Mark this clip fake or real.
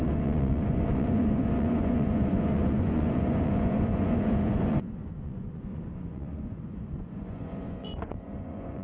fake